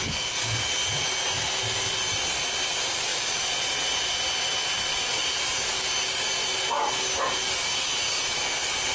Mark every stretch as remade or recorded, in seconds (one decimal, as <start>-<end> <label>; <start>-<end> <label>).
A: 0.0-8.9 recorded